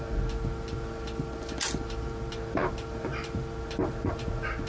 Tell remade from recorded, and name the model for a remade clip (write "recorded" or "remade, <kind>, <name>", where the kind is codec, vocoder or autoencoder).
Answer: recorded